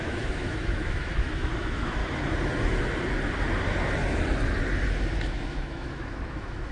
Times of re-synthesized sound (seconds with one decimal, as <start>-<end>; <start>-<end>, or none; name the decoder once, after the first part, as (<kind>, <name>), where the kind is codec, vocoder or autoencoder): 0.0-2.0 (autoencoder, DAC-VAE); 5.3-6.7